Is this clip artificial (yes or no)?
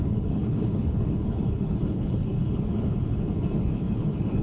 yes